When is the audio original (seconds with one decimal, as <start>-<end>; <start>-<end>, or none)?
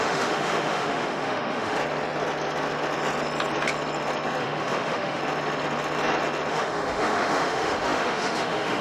1.8-4.4; 5.2-6.5